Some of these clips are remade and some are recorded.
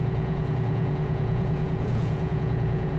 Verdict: remade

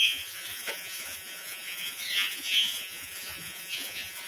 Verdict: remade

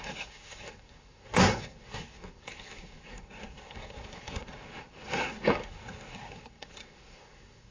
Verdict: remade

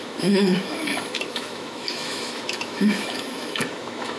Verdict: remade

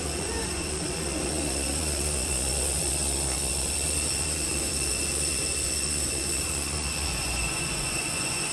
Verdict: remade